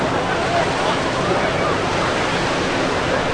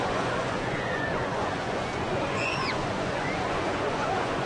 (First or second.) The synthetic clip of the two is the second